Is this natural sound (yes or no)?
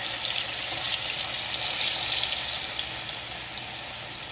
yes